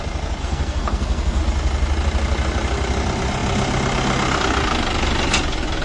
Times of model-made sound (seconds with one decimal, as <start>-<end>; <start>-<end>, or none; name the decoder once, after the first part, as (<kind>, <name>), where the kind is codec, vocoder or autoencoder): 0.4-1.4 (codec, SNAC)